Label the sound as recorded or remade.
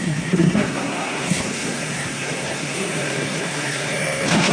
remade